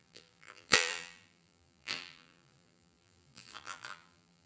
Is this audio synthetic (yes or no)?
yes